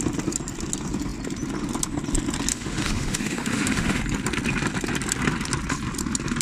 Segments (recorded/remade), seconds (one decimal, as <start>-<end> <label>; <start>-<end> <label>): 0.0-2.5 recorded; 2.5-4.0 remade; 4.0-6.4 recorded

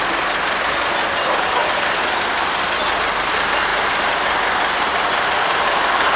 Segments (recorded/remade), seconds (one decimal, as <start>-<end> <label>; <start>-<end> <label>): 0.0-6.2 recorded